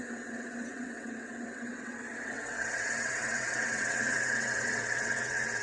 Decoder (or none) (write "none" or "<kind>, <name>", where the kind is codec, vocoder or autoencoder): vocoder, WaveNeXt